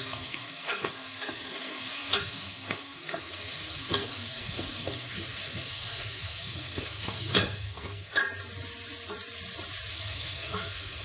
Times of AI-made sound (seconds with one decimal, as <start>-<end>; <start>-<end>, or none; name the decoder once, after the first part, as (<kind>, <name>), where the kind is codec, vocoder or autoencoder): 0.0-8.2 (codec, SNAC); 9.9-11.0